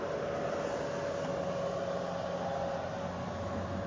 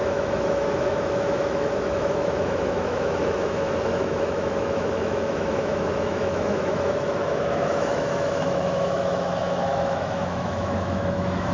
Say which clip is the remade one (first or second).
second